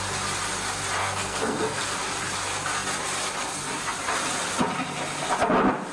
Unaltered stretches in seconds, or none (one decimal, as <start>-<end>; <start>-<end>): 0.0-1.0; 1.9-5.9